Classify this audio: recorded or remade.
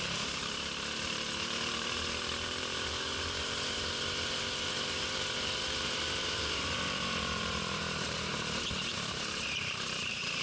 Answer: remade